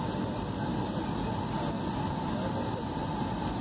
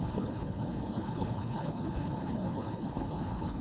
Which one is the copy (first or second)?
second